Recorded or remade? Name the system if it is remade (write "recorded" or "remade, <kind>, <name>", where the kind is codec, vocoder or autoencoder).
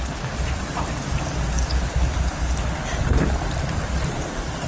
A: recorded